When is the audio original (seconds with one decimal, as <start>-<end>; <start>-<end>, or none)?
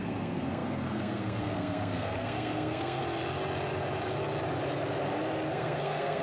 3.0-5.5